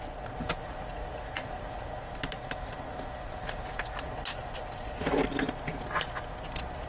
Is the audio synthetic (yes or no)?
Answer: no